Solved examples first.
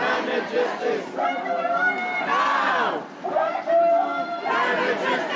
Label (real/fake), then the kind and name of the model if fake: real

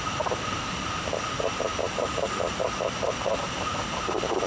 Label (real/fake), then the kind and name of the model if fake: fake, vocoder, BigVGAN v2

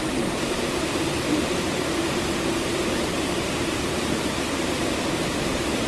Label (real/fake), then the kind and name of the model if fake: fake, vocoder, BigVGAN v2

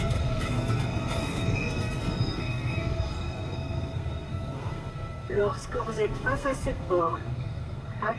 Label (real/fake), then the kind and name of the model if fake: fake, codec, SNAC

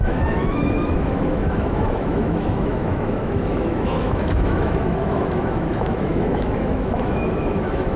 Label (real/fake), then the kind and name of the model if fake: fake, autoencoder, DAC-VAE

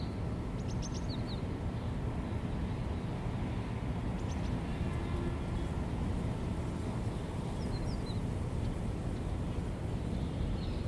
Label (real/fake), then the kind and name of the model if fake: real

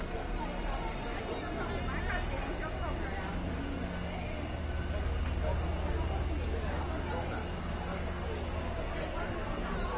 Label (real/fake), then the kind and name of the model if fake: real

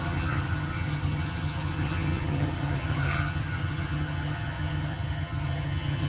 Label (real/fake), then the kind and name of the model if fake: fake, vocoder, HiFi-GAN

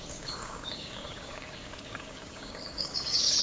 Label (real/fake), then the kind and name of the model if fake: fake, codec, DAC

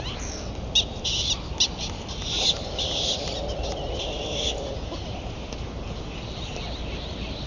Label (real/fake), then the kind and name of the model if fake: real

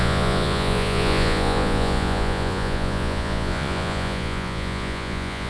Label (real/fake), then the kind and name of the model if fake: fake, vocoder, Vocos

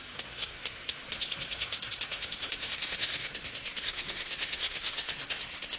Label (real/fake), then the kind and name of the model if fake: fake, codec, SNAC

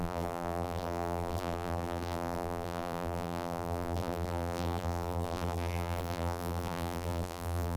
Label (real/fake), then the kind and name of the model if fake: fake, vocoder, BigVGAN v2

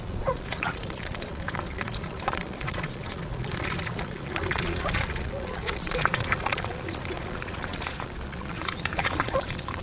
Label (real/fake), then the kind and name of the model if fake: fake, vocoder, Vocos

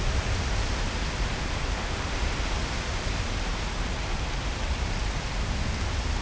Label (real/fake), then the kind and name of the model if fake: real